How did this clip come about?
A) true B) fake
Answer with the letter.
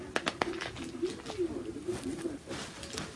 A